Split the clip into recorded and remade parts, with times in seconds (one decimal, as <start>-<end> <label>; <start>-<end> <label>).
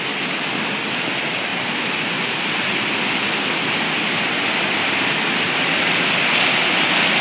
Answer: 0.0-7.2 recorded